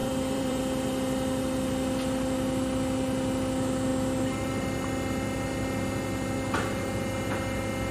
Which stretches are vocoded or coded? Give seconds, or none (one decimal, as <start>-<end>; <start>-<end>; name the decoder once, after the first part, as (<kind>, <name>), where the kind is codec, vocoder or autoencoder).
0.0-0.6 (vocoder, BigVGAN v2)